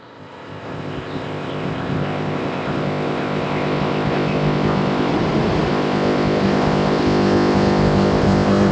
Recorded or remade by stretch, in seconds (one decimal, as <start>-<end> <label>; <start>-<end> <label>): 0.0-5.1 remade; 5.1-5.7 recorded; 5.7-8.7 remade